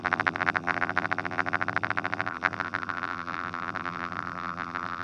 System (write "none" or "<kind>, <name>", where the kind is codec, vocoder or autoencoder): vocoder, BigVGAN v2